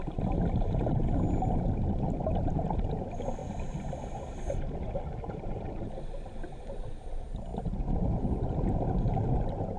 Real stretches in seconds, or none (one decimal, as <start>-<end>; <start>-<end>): 0.0-3.4; 4.1-9.8